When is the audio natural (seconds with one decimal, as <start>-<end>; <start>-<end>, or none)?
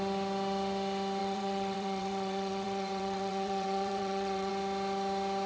0.0-1.2; 4.5-5.5